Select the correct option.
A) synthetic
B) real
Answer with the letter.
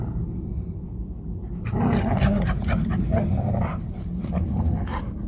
B